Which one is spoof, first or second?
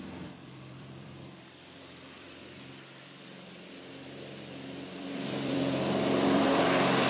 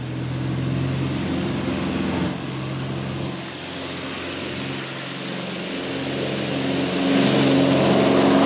first